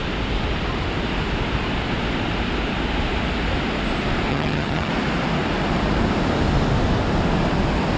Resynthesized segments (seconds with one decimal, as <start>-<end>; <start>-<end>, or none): 4.3-4.9